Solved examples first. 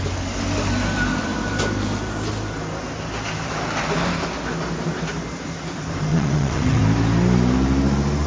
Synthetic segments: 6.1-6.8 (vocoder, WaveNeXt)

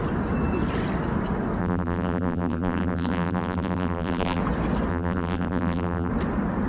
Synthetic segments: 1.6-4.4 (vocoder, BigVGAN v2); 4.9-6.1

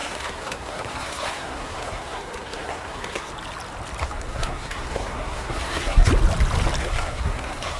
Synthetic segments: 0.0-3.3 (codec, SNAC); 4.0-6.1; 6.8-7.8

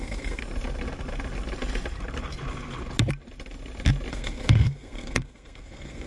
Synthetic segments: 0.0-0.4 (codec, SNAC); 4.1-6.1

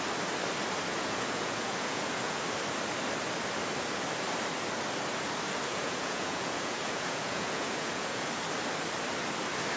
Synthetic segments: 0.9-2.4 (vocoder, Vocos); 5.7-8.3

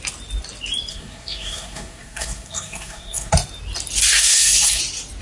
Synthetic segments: 0.9-3.3 (codec, SNAC); 4.1-4.8

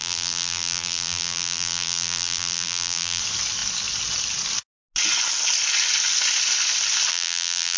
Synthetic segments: 0.0-3.2 (vocoder, BigVGAN v2); 7.1-7.8

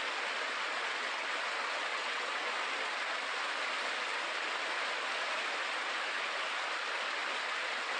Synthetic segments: 1.9-2.5 (vocoder, WaveNeXt)